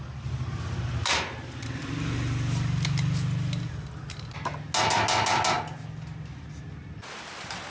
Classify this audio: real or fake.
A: real